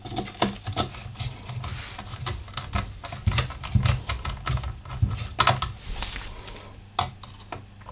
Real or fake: real